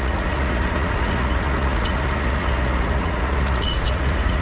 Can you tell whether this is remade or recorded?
remade